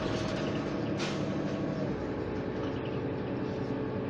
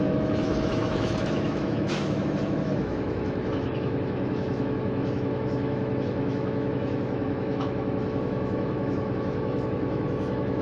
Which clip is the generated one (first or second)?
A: second